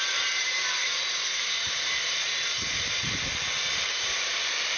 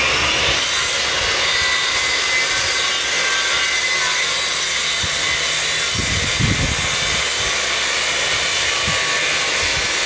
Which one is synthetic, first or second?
first